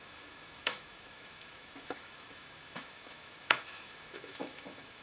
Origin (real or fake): fake